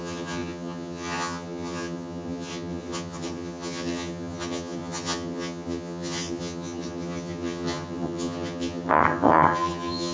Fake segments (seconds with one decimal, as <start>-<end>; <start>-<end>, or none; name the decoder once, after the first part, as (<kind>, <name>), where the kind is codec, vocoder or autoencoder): 0.0-10.1 (vocoder, HiFi-GAN)